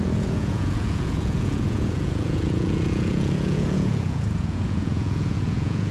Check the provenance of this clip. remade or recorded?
remade